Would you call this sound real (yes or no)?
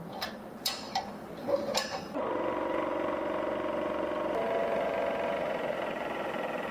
no